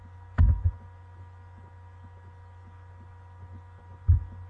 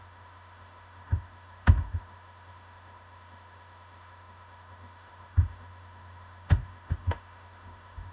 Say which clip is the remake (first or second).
second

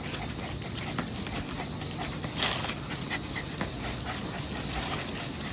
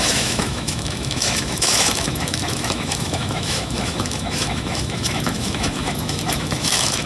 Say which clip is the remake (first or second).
second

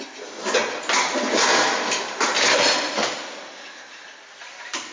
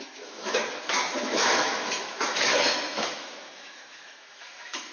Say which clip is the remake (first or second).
second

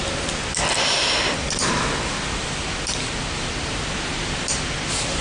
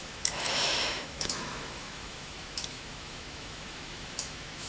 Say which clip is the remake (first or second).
second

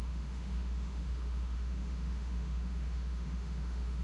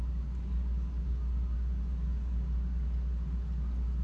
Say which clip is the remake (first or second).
first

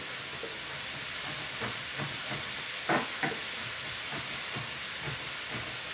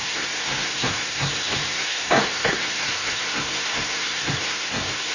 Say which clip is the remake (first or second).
second